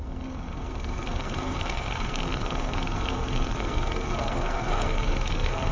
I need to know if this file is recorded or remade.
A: remade